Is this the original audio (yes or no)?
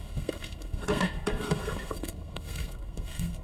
no